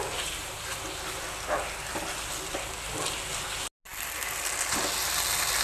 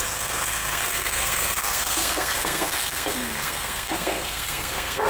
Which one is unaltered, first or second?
first